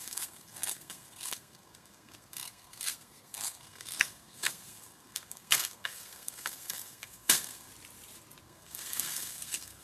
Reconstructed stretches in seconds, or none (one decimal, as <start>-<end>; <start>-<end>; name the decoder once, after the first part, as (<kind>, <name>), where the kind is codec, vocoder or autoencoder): 0.0-7.7 (codec, SNAC); 8.4-9.8